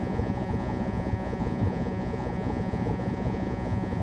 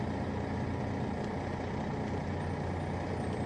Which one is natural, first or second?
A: second